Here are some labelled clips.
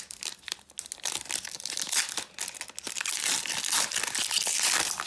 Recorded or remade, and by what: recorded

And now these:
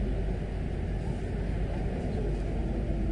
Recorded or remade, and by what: recorded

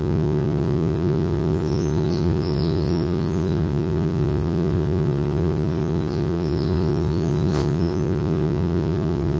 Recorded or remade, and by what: remade, vocoder, Vocos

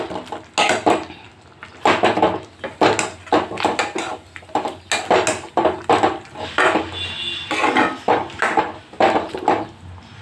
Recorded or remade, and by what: recorded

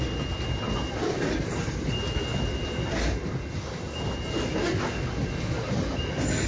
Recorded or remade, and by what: recorded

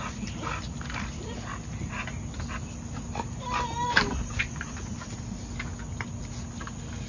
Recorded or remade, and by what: recorded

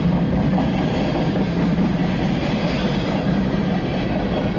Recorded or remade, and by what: recorded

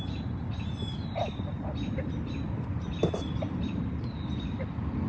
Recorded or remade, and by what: recorded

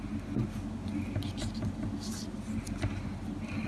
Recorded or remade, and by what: recorded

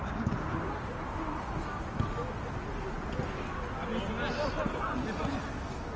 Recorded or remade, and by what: recorded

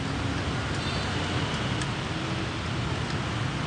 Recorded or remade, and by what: recorded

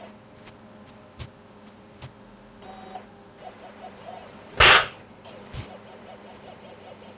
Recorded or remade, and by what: recorded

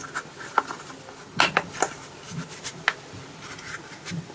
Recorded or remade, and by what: recorded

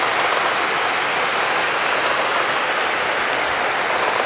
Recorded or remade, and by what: recorded